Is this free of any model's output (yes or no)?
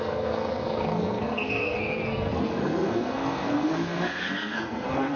no